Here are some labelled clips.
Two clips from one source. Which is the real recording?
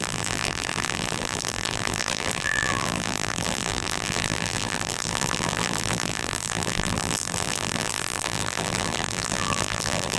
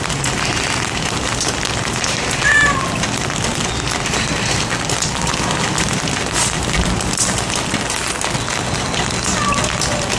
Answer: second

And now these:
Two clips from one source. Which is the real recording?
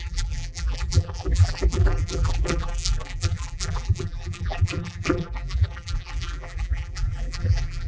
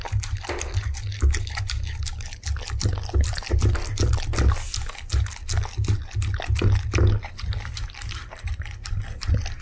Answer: second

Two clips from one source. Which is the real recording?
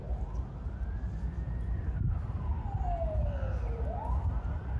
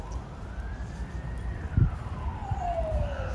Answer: first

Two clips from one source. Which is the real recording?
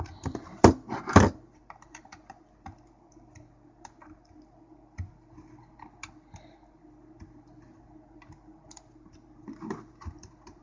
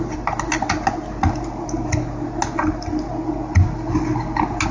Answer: second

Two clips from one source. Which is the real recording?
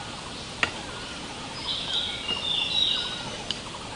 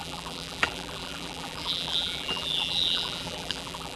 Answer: first